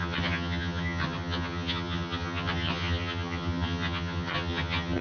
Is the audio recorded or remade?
remade